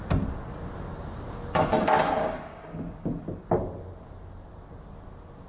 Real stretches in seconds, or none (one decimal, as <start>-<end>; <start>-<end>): 0.0-2.2; 2.8-5.5

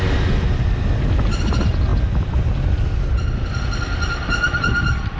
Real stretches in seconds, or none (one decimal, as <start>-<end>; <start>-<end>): 0.0-5.2

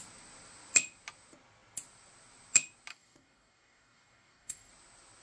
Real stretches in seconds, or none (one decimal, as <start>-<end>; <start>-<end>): 0.0-2.9; 4.7-5.2

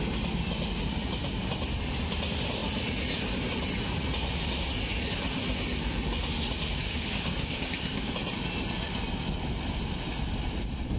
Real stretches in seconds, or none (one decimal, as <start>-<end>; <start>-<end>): 0.0-6.8; 8.1-11.0